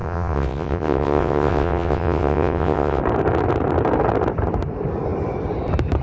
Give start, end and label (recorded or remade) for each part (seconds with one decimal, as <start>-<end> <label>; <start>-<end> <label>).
0.0-3.0 remade; 3.0-6.0 recorded